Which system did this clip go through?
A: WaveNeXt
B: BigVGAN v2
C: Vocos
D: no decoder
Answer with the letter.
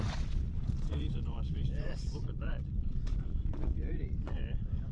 C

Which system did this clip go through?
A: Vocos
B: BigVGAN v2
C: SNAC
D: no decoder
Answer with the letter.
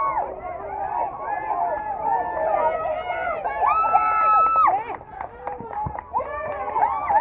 D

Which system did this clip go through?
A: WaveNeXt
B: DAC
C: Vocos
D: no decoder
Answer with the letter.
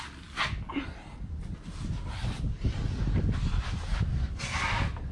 D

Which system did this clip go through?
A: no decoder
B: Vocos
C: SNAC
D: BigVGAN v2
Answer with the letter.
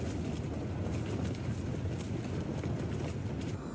A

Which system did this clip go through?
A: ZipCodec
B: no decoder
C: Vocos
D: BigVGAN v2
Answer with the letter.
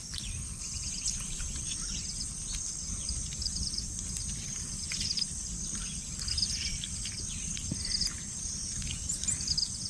B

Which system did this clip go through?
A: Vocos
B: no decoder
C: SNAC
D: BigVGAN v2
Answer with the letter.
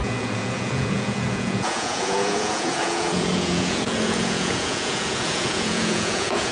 A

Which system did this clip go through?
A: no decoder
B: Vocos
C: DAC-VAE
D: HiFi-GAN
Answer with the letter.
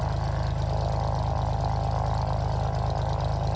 A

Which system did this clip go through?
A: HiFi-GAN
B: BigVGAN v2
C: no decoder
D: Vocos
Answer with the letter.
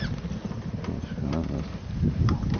C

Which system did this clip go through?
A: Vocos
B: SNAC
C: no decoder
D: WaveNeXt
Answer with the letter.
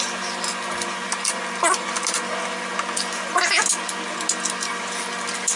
C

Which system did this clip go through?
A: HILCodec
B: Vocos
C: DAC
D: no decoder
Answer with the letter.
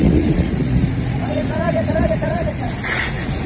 B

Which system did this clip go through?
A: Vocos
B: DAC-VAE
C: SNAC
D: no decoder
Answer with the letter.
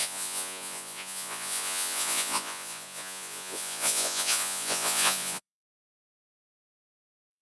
A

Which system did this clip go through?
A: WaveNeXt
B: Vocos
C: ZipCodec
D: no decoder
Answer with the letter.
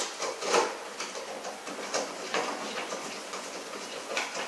B